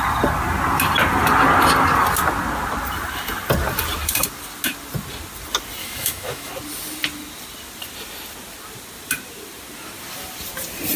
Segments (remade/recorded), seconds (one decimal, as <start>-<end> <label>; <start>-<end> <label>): 0.0-5.8 recorded; 5.8-6.5 remade; 6.5-11.0 recorded